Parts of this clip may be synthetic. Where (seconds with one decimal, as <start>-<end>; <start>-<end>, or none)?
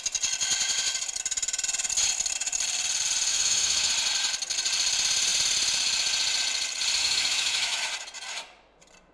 3.3-3.9; 7.0-7.9